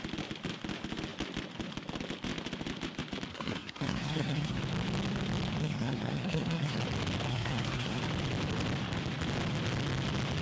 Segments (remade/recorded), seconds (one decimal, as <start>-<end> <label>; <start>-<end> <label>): 0.0-3.3 recorded; 3.3-4.6 remade; 4.6-5.6 recorded; 5.6-6.8 remade; 6.8-7.3 recorded; 7.3-8.0 remade; 8.0-10.4 recorded